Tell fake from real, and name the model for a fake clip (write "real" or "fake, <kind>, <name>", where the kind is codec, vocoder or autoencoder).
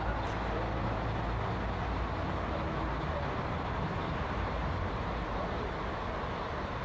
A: real